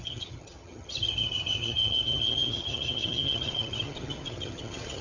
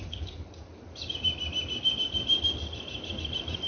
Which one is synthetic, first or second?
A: first